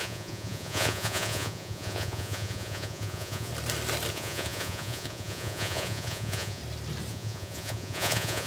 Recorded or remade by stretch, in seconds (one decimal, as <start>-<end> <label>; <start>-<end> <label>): 0.0-3.5 remade; 3.5-4.1 recorded; 4.1-6.6 remade; 6.6-7.1 recorded; 7.1-8.5 remade